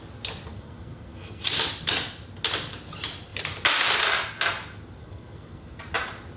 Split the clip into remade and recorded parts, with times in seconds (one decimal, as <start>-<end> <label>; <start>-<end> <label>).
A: 0.0-0.5 recorded; 0.5-1.4 remade; 1.4-5.0 recorded; 5.0-5.8 remade; 5.8-6.4 recorded

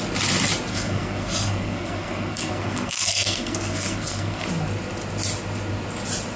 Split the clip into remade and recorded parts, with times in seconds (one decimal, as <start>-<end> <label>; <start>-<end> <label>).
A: 0.0-0.7 recorded; 0.7-4.5 remade; 4.5-6.4 recorded

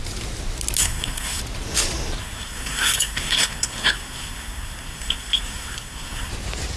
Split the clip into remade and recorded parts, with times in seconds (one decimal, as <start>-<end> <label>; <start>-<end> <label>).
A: 0.0-0.8 recorded; 0.8-1.4 remade; 1.4-2.2 recorded; 2.2-6.3 remade; 6.3-6.8 recorded

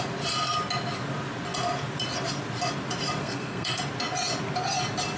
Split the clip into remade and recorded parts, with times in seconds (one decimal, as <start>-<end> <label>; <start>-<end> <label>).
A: 0.0-3.2 recorded; 3.2-3.8 remade; 3.8-5.2 recorded

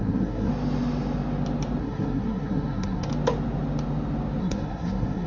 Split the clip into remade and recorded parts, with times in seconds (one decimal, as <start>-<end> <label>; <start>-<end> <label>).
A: 0.0-0.5 remade; 0.5-1.8 recorded; 1.8-3.1 remade; 3.1-4.4 recorded; 4.4-5.3 remade